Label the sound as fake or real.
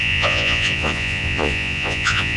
fake